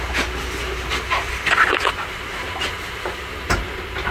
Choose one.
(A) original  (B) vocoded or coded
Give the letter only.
A